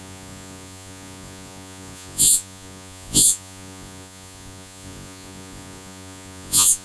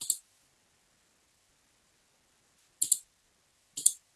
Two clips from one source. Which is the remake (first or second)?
first